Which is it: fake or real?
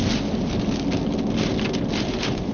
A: real